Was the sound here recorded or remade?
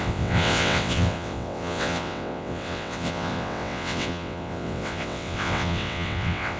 remade